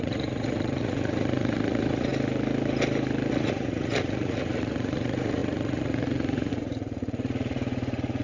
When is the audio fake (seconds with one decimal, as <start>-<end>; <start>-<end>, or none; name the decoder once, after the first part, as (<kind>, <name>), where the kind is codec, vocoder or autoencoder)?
0.0-2.1 (vocoder, Vocos); 3.3-8.2